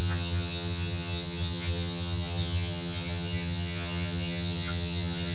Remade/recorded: remade